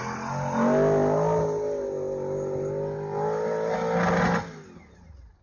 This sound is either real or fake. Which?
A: real